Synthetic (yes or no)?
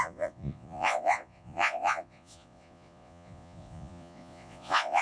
yes